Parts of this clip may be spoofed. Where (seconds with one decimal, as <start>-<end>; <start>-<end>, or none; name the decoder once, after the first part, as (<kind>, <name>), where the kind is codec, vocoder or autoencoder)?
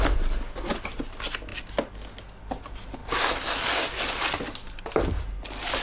none